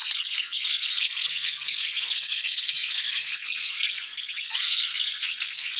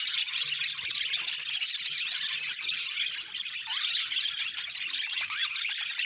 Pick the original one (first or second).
second